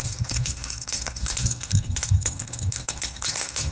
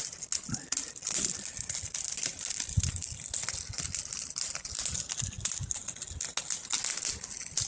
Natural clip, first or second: second